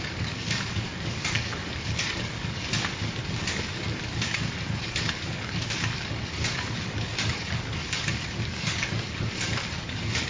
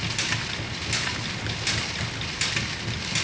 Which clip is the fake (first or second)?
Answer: first